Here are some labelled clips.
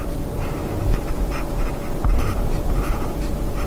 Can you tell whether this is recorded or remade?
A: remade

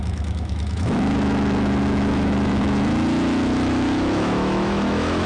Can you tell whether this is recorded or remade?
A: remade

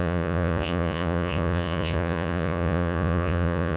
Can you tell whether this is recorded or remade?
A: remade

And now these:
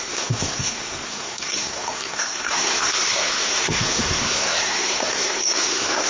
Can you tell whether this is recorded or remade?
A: remade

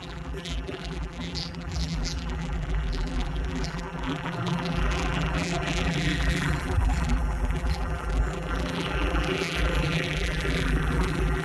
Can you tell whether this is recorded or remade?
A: remade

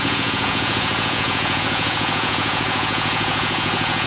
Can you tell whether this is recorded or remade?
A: remade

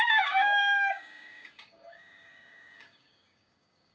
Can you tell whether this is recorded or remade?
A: remade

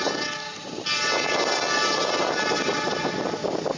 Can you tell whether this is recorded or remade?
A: recorded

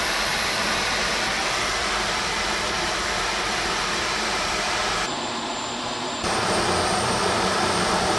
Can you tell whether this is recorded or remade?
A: remade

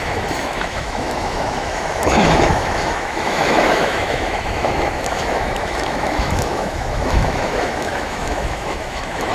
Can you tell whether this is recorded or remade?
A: remade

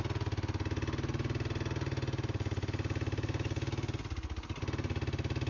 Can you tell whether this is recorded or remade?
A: recorded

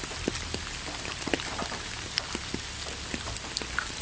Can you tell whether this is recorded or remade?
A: recorded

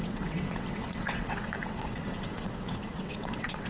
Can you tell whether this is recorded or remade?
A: remade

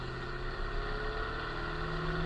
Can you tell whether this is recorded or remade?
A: recorded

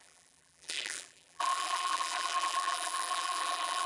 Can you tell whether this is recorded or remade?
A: remade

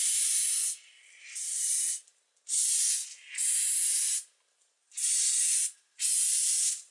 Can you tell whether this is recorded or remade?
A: recorded